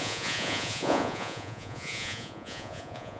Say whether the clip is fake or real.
fake